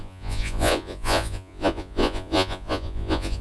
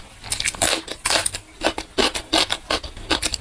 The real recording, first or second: second